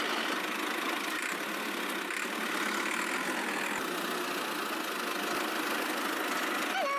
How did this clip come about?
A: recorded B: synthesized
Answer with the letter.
A